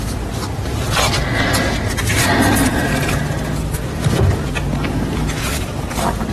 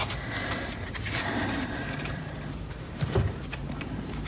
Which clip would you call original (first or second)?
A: first